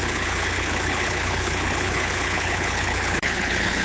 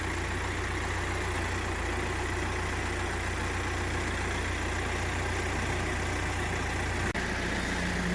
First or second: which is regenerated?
first